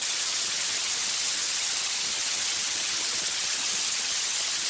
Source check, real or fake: fake